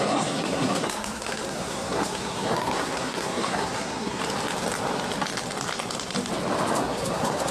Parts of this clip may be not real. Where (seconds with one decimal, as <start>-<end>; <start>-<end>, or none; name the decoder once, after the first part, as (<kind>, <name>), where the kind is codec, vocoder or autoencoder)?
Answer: 0.0-4.2 (codec, SNAC); 6.8-7.5